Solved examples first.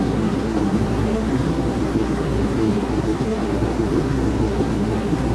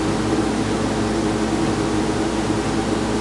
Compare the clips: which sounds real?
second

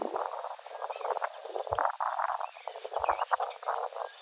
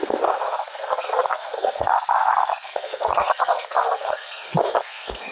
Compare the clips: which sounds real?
first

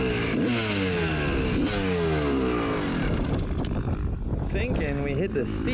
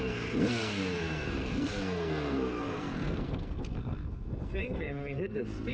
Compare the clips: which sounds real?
first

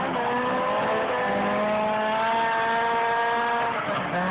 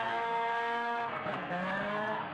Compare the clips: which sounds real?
first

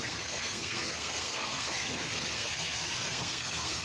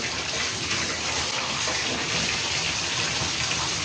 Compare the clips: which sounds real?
second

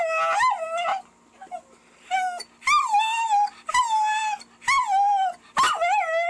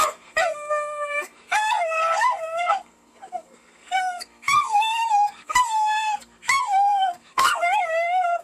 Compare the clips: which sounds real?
first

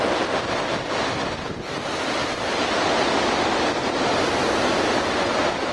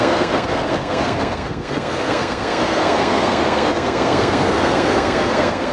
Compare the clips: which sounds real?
first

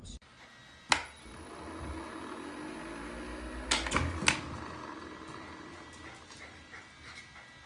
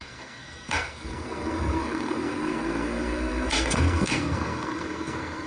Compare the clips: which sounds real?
first